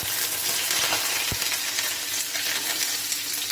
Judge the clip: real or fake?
real